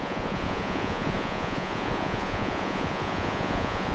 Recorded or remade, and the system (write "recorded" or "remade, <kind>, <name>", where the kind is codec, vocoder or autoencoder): remade, vocoder, Vocos